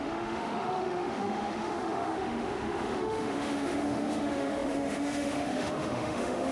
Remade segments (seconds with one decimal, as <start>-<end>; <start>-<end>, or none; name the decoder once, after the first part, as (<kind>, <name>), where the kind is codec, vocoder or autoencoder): 0.0-6.5 (autoencoder, DAC-VAE)